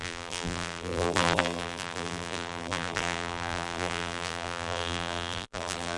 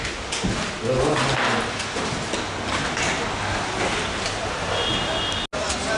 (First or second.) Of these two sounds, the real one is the second